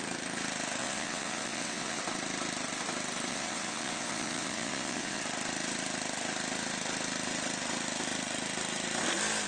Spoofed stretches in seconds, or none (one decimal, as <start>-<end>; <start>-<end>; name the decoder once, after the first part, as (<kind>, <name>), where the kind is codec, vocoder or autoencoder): 0.8-2.0 (vocoder, WaveNeXt); 3.3-5.2